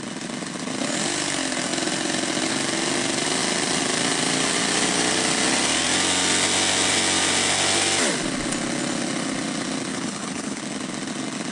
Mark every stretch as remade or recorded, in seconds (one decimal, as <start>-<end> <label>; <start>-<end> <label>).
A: 0.0-9.9 recorded; 9.9-10.6 remade; 10.6-11.5 recorded